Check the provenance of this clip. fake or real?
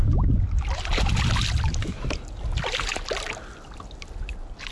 real